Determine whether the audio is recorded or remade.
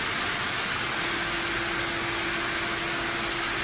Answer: recorded